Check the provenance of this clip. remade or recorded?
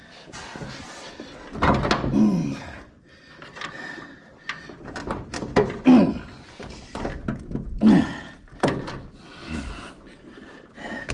recorded